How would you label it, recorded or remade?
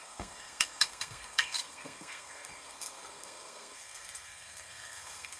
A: remade